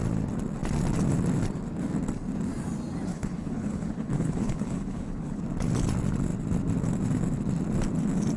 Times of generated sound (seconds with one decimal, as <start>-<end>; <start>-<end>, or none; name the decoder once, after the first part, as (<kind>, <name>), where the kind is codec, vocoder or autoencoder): 3.1-5.4 (codec, HILCodec)